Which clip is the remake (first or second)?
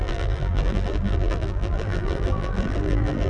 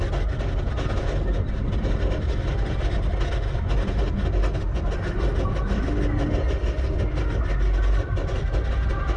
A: first